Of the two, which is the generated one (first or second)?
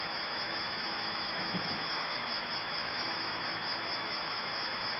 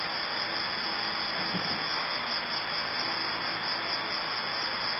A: first